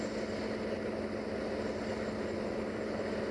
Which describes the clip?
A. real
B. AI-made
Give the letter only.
A